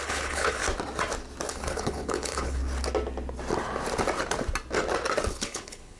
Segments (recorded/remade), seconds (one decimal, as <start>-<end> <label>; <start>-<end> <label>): 0.0-0.6 remade; 0.6-1.5 recorded; 1.5-2.6 remade; 2.6-5.3 recorded; 5.3-6.0 remade